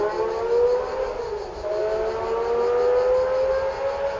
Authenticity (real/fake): real